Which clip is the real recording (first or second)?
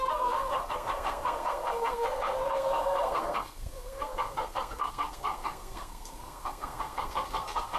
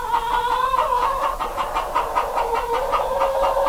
second